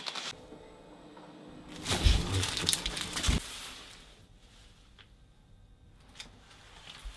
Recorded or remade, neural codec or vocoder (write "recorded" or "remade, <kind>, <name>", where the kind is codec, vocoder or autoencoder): recorded